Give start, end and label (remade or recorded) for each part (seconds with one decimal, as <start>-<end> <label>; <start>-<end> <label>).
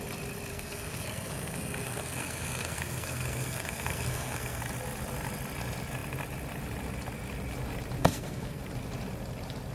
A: 0.0-0.5 recorded; 0.5-4.6 remade; 4.6-8.0 recorded; 8.0-8.6 remade; 8.6-9.7 recorded